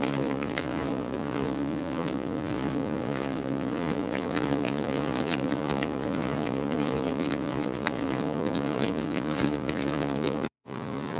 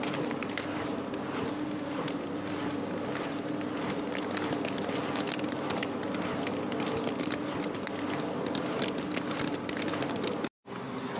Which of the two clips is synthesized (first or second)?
first